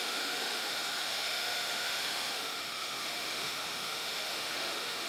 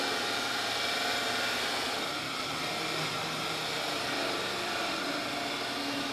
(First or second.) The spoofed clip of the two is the first